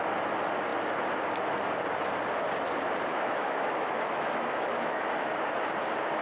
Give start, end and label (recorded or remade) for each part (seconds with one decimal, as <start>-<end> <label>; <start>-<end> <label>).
0.0-3.1 recorded; 3.1-5.3 remade; 5.3-6.2 recorded